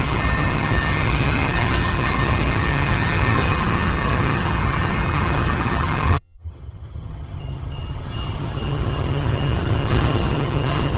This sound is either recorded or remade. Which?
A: remade